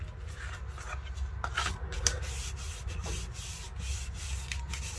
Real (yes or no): yes